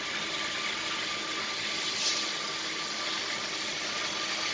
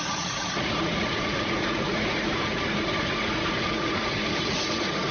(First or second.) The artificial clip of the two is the second